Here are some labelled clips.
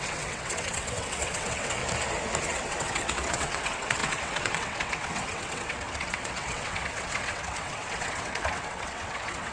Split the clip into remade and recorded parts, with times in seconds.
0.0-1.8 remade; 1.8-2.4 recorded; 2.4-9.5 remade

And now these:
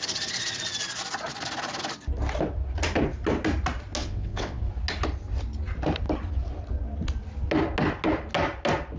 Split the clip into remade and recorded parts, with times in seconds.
0.0-4.0 recorded; 4.0-4.6 remade; 4.6-9.0 recorded